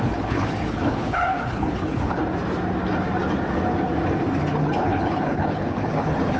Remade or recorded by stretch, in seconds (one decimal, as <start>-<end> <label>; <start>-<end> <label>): 0.0-2.2 remade; 2.2-4.6 recorded; 4.6-6.4 remade